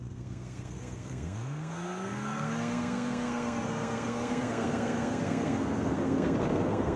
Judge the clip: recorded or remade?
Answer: remade